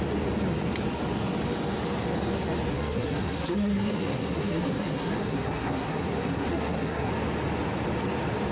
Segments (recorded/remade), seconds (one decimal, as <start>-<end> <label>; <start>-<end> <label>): 0.0-2.7 recorded; 2.7-7.1 remade; 7.1-8.5 recorded